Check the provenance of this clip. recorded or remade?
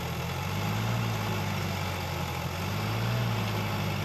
recorded